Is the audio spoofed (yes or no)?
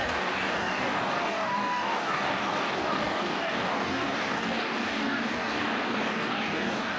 yes